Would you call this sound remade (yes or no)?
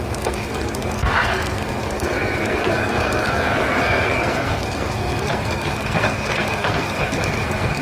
yes